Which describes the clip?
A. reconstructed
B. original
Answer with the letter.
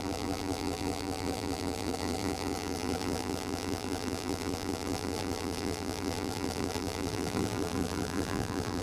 A